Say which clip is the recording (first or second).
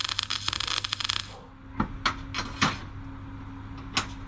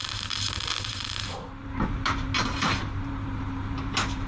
first